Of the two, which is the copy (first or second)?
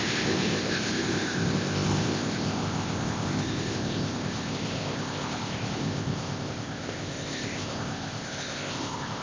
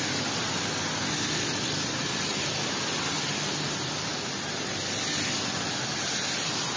first